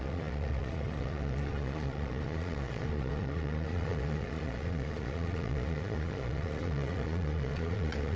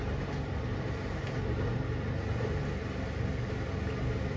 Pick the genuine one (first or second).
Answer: second